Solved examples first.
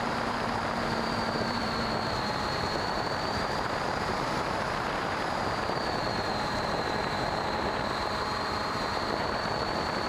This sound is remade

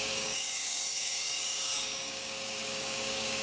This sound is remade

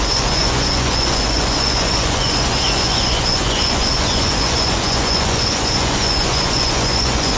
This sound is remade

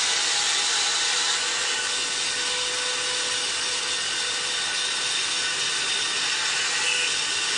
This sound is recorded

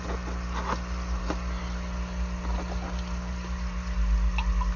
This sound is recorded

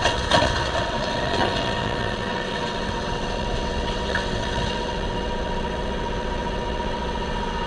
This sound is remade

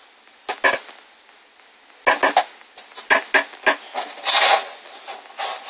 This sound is recorded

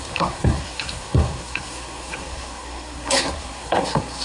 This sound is remade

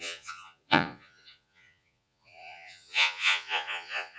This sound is remade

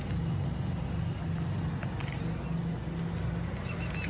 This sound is recorded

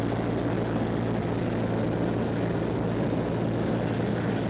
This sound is recorded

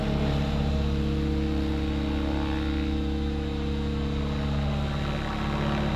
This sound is recorded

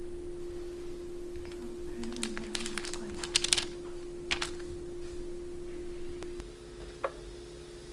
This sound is recorded